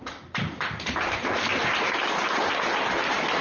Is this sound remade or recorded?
remade